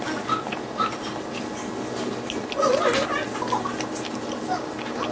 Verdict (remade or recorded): recorded